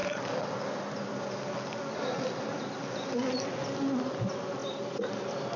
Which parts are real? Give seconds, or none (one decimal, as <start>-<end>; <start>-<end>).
0.0-5.6